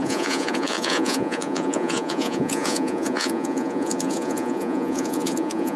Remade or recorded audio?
remade